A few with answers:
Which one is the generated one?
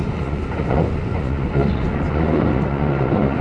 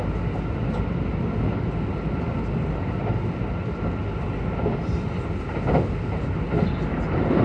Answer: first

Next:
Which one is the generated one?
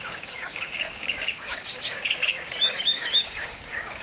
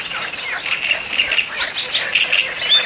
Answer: first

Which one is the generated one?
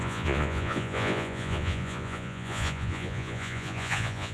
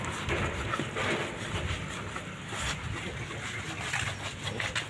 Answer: first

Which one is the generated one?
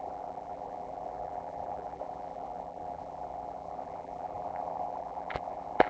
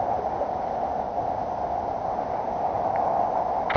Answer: first